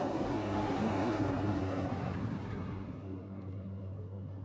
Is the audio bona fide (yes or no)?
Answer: no